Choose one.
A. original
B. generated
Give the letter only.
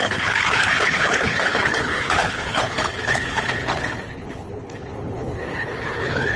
B